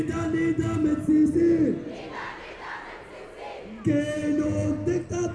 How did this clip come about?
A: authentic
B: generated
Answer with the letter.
A